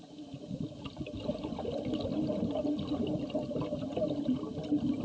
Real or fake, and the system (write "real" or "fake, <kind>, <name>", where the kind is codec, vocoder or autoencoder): real